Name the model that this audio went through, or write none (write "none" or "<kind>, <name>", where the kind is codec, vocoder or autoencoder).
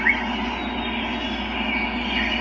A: none